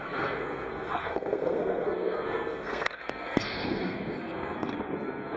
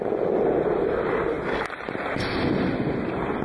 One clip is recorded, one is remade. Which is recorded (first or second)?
second